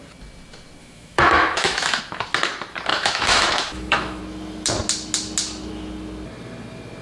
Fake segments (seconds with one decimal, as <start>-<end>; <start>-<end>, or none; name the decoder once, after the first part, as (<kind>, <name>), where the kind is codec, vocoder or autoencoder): 0.8-2.0 (autoencoder, DAC-VAE); 2.9-4.2